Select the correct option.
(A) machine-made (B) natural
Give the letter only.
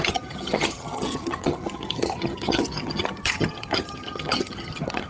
A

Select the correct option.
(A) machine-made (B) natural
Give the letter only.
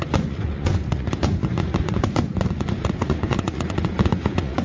A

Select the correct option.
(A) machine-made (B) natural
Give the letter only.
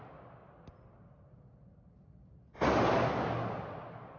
B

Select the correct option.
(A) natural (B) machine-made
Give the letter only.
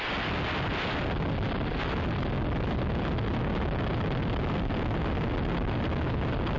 A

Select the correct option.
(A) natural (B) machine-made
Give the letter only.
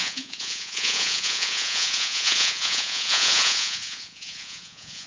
B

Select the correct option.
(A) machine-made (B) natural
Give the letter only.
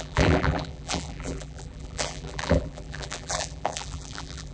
A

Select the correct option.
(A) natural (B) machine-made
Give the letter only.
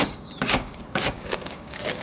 B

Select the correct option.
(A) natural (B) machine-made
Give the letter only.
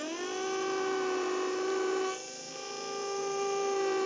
B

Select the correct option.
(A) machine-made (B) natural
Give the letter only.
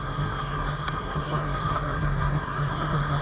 A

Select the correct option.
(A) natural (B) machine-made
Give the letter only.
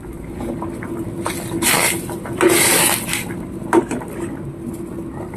A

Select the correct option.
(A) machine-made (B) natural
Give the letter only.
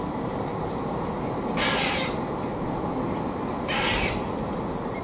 B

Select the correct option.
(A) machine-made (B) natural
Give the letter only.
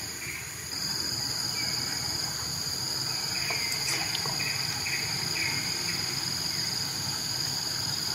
B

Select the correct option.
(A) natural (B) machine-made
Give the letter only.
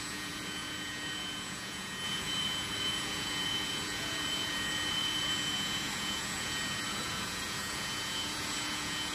B